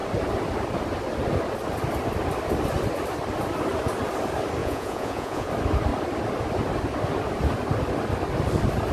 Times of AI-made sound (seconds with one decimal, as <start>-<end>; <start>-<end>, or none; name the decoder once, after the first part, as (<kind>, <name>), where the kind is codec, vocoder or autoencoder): 4.6-5.5 (vocoder, Vocos)